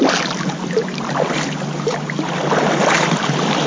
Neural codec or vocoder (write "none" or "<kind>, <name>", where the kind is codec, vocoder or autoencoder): none